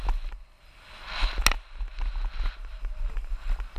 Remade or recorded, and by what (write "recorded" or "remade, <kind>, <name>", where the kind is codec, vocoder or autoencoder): recorded